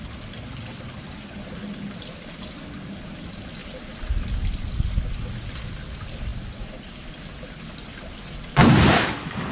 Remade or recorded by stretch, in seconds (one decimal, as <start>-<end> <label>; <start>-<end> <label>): 0.0-9.5 recorded